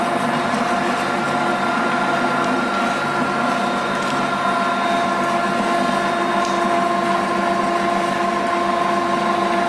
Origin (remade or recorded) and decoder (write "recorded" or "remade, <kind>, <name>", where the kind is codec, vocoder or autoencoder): recorded